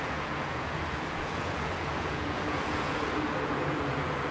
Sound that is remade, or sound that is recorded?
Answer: remade